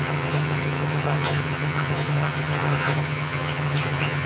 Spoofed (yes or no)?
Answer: yes